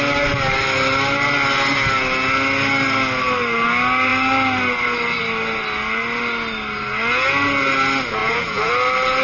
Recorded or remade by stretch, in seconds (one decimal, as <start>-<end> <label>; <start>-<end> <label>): 0.0-8.2 recorded; 8.2-8.7 remade; 8.7-9.2 recorded